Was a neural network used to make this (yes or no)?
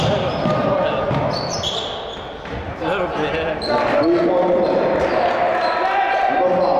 no